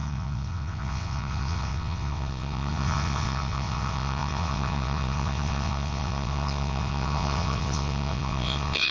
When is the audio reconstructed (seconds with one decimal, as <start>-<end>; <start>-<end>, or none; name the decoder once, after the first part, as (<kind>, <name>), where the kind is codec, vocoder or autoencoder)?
0.0-8.9 (vocoder, WaveNeXt)